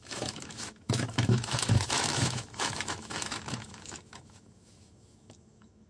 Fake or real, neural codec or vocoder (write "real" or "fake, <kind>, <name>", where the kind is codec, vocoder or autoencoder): fake, autoencoder, DAC-VAE